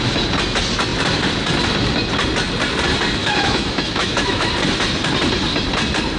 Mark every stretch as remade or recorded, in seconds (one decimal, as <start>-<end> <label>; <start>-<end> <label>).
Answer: 0.0-3.2 recorded; 3.2-4.5 remade; 4.5-6.2 recorded